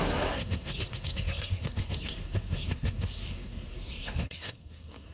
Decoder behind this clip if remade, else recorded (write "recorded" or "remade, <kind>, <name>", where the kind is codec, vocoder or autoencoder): remade, codec, SNAC